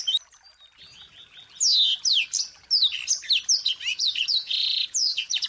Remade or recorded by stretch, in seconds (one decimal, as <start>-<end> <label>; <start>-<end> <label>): 0.0-3.9 recorded; 3.9-5.5 remade